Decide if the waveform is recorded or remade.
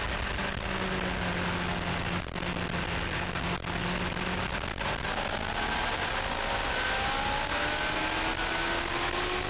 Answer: recorded